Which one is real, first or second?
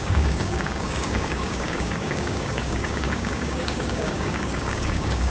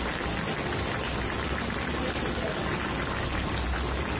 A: second